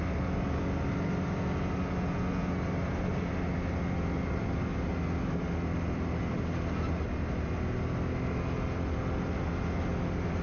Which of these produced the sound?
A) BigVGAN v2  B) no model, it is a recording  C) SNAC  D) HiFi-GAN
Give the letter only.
B